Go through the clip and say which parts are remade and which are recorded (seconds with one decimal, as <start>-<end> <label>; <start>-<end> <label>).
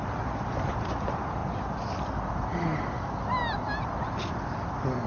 0.0-5.1 recorded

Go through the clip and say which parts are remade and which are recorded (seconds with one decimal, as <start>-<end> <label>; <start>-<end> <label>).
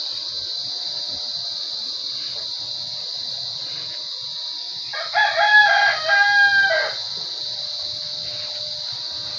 0.0-9.4 recorded